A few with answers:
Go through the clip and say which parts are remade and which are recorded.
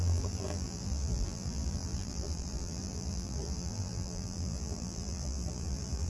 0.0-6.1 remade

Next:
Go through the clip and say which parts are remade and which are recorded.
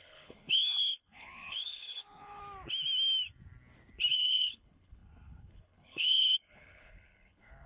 0.0-2.4 remade; 2.4-4.1 recorded; 4.1-7.7 remade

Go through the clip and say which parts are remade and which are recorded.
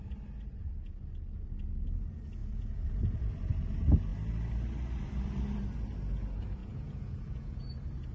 0.0-2.4 recorded; 2.4-3.3 remade; 3.3-6.6 recorded; 6.6-7.6 remade; 7.6-8.1 recorded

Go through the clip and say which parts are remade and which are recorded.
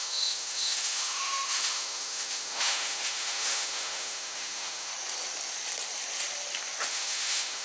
0.0-4.9 remade; 4.9-6.9 recorded; 6.9-7.6 remade